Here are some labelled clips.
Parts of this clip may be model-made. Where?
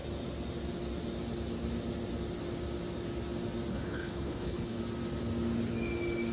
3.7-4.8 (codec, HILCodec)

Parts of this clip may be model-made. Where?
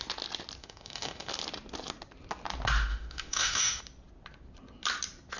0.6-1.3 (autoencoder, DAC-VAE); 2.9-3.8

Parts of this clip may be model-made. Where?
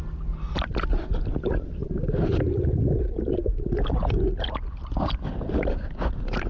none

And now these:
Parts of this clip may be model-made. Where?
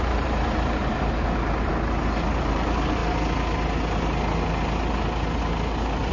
0.0-1.7 (vocoder, BigVGAN v2); 2.4-3.0